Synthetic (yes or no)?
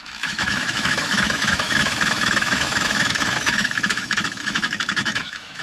yes